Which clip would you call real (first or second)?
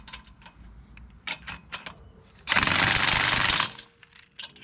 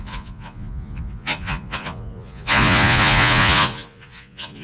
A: first